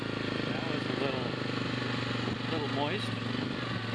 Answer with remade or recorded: recorded